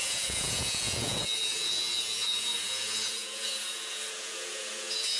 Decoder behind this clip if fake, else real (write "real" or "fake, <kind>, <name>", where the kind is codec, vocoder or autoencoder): fake, vocoder, Vocos